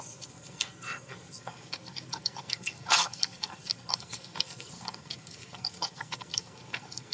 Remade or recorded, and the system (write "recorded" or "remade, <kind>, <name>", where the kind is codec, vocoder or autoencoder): remade, codec, SNAC